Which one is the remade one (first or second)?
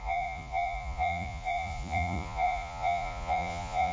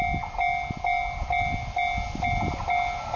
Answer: first